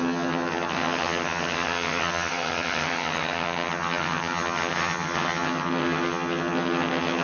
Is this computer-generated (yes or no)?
yes